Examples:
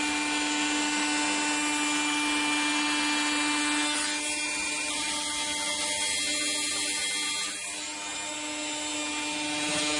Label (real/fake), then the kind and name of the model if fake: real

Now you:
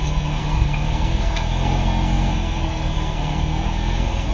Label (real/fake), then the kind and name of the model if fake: fake, codec, SNAC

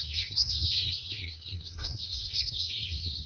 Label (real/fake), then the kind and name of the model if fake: fake, codec, SNAC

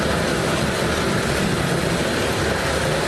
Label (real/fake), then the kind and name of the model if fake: real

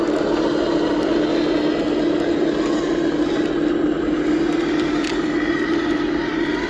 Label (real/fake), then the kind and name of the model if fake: real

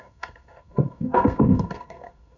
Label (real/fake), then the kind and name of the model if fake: fake, codec, SNAC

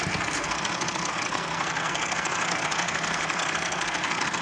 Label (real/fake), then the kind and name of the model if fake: fake, codec, SNAC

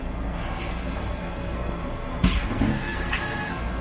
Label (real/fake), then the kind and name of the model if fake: fake, codec, SNAC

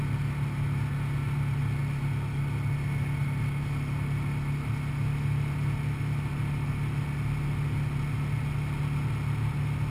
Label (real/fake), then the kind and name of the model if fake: real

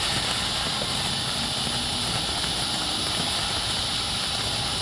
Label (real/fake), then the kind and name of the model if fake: real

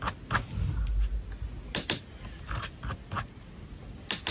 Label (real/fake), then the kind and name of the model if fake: real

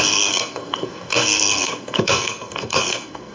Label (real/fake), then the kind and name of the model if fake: fake, codec, SNAC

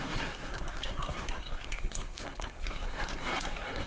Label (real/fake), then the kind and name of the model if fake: fake, codec, SNAC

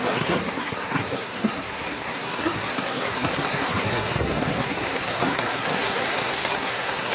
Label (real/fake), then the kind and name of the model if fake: fake, codec, SNAC